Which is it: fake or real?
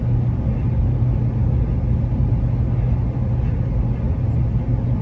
real